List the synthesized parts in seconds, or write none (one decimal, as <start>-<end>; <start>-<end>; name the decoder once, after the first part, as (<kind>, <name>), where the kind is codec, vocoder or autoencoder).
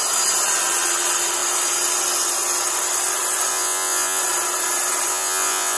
3.5-4.2 (vocoder, Vocos); 5.1-5.8